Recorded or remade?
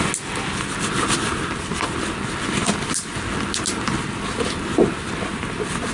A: recorded